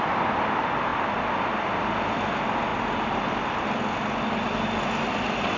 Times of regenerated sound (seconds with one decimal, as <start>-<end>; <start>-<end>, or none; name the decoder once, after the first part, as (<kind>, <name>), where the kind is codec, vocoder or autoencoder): none